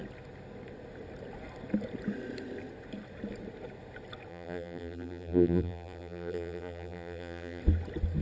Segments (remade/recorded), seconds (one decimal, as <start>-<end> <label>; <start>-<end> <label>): 0.0-4.3 recorded; 4.3-7.6 remade; 7.6-8.2 recorded